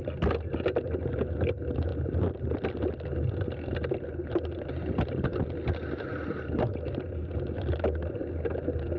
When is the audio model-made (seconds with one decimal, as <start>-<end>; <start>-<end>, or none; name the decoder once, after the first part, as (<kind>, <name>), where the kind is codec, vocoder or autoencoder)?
none